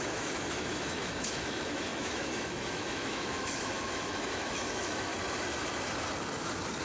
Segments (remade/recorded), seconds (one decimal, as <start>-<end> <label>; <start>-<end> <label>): 0.0-5.1 remade; 5.1-6.8 recorded